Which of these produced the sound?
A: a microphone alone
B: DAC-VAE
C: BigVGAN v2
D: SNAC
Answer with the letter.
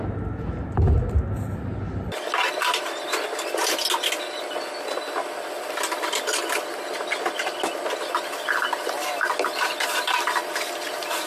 A